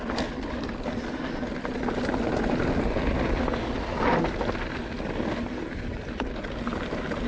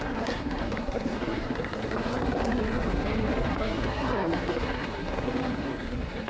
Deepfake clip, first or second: second